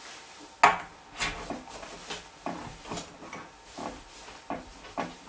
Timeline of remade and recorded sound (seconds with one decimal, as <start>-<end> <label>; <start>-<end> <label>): 0.0-2.6 recorded; 2.6-3.1 remade; 3.1-5.3 recorded